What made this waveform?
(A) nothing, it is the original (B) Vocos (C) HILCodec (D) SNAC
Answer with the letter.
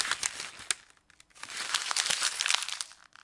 A